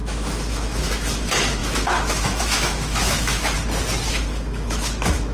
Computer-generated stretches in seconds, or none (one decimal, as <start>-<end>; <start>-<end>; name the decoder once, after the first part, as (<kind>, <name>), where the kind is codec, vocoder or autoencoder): 0.0-3.6 (autoencoder, DAC-VAE); 4.1-5.3